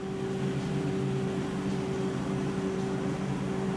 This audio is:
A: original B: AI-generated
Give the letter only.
A